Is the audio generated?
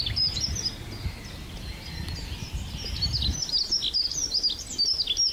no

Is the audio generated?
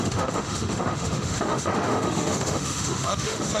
yes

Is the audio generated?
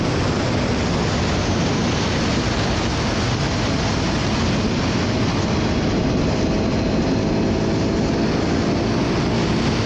no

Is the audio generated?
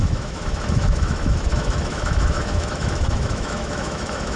yes